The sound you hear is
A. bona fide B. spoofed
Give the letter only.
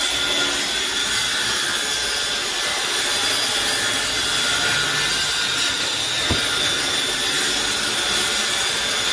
A